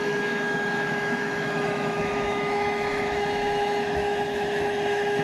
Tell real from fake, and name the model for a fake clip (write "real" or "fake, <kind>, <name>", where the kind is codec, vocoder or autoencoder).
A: fake, autoencoder, DAC-VAE